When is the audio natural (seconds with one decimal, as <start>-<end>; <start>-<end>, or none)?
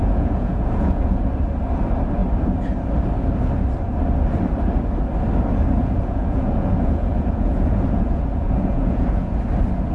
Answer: 1.2-5.8; 9.3-9.9